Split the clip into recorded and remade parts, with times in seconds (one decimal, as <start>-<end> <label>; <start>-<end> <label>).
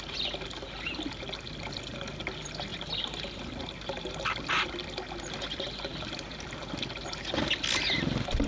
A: 0.0-8.5 recorded